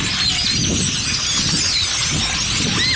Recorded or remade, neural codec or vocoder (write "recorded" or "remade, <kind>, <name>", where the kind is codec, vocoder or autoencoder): recorded